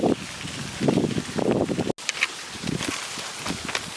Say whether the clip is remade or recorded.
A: recorded